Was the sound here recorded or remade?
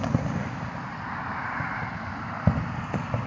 recorded